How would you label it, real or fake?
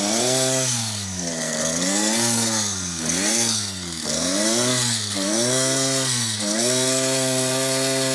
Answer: fake